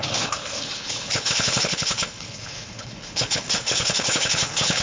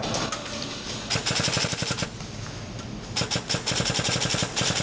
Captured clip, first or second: second